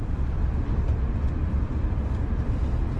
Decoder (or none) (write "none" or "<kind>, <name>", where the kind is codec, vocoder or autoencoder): none